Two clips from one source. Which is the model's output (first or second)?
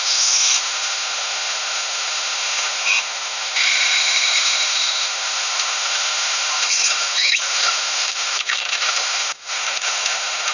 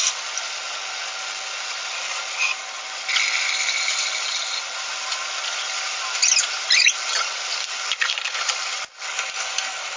first